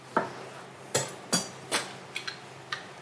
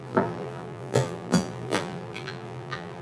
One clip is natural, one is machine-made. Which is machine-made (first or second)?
second